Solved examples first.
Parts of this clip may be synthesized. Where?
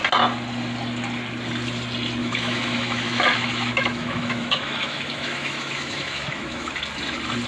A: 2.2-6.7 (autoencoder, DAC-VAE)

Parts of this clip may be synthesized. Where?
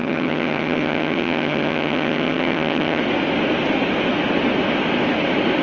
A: 0.0-3.0 (vocoder, HiFi-GAN)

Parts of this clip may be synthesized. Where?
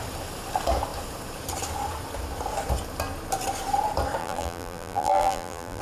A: 4.2-5.8 (vocoder, BigVGAN v2)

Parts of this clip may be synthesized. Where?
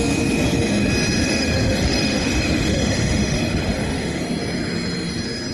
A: 1.2-4.2 (autoencoder, DAC-VAE)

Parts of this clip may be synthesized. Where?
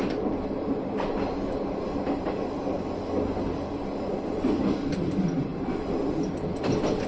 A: none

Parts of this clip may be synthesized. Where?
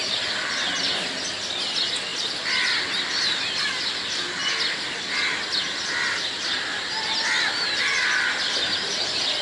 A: none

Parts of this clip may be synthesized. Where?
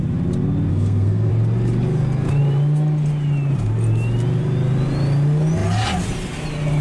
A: 0.7-1.3 (codec, SNAC)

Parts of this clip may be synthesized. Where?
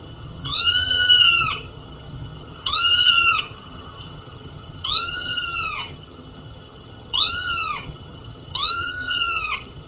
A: 0.0-9.9 (vocoder, HiFi-GAN)